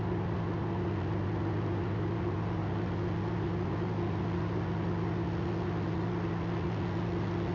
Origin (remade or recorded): recorded